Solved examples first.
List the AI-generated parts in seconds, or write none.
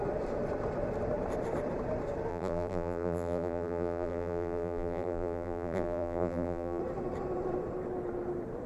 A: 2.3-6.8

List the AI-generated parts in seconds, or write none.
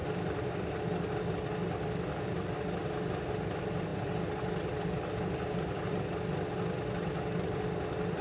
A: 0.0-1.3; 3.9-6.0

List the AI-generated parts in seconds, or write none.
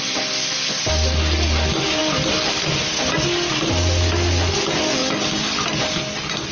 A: 5.0-5.8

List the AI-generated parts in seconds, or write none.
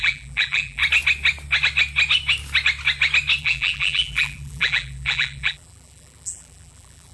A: 0.0-0.8; 3.4-7.1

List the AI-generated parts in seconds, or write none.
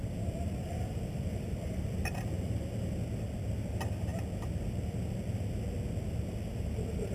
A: 0.0-2.5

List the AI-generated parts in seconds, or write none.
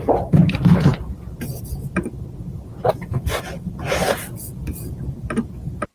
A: 0.0-5.2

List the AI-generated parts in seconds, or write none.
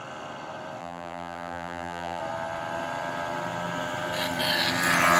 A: 0.8-2.2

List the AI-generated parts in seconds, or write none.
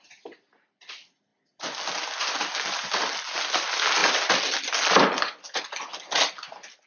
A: none